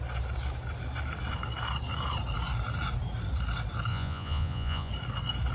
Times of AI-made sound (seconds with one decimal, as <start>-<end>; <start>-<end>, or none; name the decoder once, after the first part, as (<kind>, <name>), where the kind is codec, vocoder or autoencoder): 3.9-4.9 (vocoder, Vocos)